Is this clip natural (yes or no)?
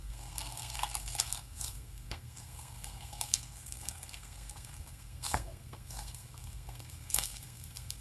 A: no